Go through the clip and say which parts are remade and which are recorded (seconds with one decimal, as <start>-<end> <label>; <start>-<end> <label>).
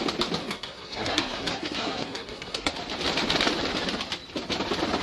0.0-0.4 recorded; 0.4-2.7 remade; 2.7-5.0 recorded